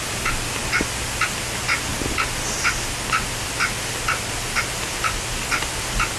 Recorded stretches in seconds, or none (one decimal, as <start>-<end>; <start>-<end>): 0.0-6.2